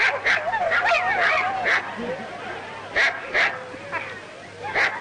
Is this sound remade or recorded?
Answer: recorded